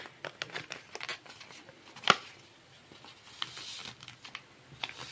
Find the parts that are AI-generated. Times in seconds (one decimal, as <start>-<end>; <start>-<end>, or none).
none